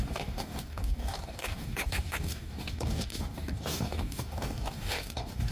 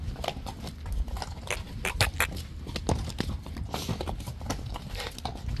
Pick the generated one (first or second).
first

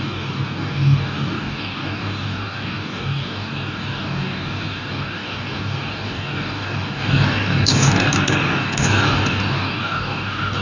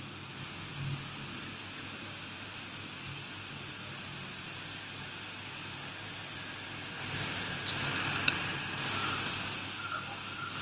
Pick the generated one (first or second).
first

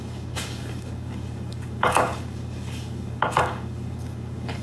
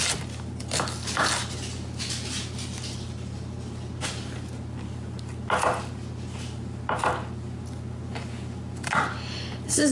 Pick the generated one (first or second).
first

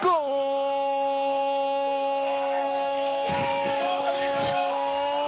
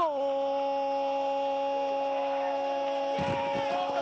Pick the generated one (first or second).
first